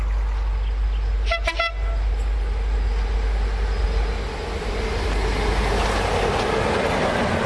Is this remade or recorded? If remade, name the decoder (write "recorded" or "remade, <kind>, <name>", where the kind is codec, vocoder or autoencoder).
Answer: recorded